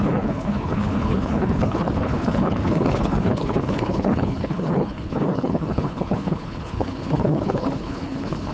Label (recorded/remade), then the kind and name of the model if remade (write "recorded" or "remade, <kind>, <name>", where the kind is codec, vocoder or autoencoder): remade, codec, HILCodec